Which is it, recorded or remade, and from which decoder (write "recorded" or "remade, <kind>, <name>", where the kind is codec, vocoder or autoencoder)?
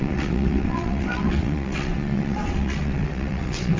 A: remade, vocoder, WaveNeXt